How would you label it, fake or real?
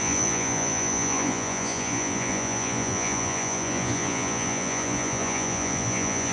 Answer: fake